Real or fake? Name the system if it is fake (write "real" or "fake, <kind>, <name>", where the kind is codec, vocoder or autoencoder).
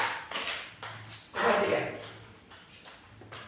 fake, vocoder, BigVGAN v2